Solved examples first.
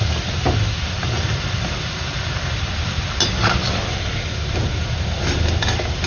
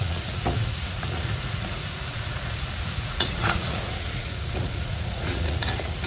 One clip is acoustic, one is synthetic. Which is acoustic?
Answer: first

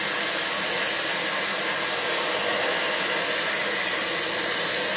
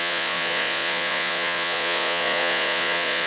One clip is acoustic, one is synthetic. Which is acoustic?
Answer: first